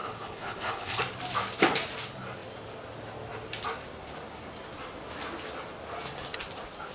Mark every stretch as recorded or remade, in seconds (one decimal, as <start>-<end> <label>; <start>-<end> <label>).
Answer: 0.0-1.0 remade; 1.0-6.9 recorded